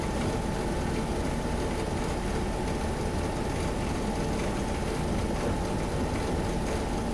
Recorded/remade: recorded